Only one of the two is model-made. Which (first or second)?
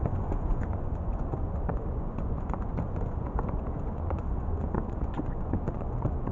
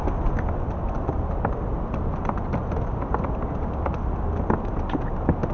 first